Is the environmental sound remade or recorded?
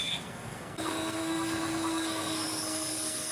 remade